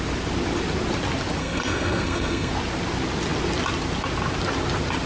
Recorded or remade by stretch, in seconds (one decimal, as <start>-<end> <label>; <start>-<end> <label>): 0.0-1.4 recorded; 1.4-2.5 remade; 2.5-5.1 recorded

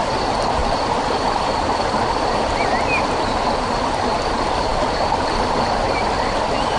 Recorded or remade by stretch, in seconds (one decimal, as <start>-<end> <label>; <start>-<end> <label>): 0.0-6.8 recorded

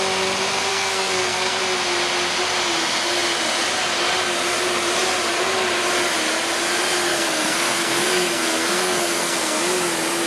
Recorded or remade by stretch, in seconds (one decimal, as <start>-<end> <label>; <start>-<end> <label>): 0.0-0.7 recorded; 0.7-1.6 remade; 1.6-7.1 recorded; 7.1-9.6 remade; 9.6-10.3 recorded

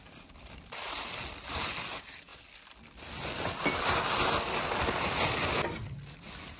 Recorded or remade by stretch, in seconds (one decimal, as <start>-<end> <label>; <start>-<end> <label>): 0.0-6.6 recorded

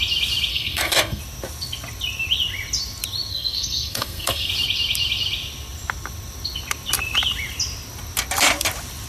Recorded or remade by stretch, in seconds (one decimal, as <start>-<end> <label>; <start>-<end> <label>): 0.0-0.5 recorded; 0.5-1.2 remade; 1.2-3.3 recorded; 3.3-4.5 remade; 4.5-9.1 recorded

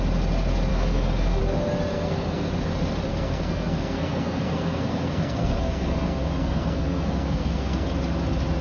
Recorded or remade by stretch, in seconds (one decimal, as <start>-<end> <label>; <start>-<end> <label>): 0.0-0.7 recorded; 0.7-1.4 remade; 1.4-1.9 recorded; 1.9-2.5 remade; 2.5-3.1 recorded; 3.1-7.9 remade; 7.9-8.6 recorded